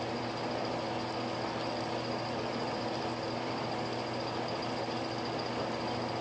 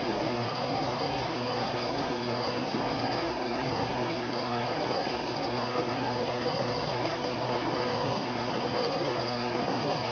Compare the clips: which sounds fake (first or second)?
second